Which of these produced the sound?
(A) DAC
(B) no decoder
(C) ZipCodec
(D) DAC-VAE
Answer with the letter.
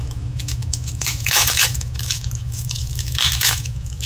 D